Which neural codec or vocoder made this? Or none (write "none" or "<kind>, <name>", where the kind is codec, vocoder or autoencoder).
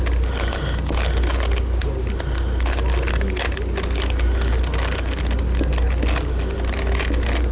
none